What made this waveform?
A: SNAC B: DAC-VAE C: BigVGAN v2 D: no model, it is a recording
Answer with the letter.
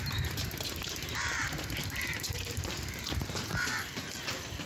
C